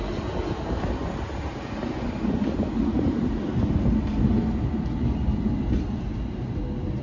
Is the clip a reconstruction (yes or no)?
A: no